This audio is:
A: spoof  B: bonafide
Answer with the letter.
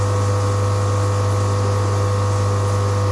B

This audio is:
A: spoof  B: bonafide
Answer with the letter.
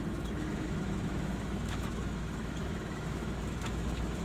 A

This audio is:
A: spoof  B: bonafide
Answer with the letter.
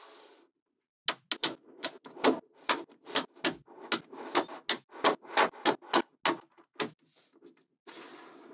B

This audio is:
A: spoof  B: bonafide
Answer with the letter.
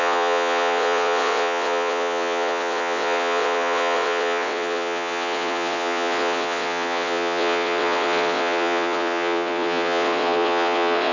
A